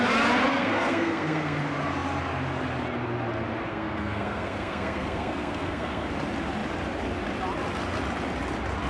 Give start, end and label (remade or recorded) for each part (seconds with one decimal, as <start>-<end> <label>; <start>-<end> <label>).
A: 0.0-0.5 recorded; 0.5-1.6 remade; 1.6-3.7 recorded; 3.7-6.1 remade; 6.1-8.9 recorded